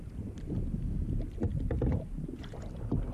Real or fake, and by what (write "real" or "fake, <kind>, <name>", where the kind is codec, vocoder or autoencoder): real